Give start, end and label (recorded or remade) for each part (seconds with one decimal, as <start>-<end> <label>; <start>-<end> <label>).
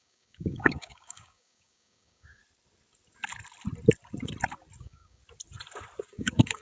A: 0.0-2.4 remade; 2.4-4.8 recorded; 4.8-5.2 remade; 5.2-6.1 recorded; 6.1-6.6 remade